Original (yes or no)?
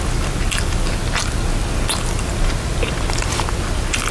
yes